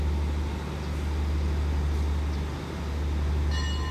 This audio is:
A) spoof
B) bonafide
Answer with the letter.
B